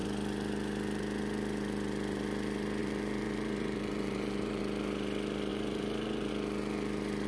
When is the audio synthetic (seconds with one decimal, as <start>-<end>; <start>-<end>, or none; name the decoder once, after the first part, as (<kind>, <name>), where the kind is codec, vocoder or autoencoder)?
2.8-4.6 (vocoder, BigVGAN v2); 5.5-6.3